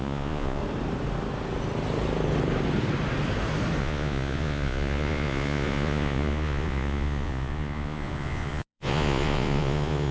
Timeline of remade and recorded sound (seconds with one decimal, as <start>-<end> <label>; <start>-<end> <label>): 0.0-0.6 remade; 0.6-3.8 recorded; 3.8-10.1 remade